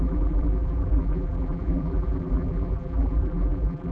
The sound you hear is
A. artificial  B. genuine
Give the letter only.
A